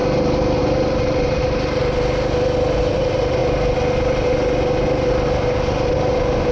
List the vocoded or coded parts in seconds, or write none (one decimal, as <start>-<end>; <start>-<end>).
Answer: 0.6-1.8; 2.9-3.4